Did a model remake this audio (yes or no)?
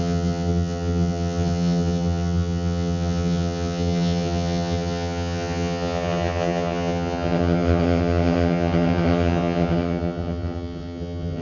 yes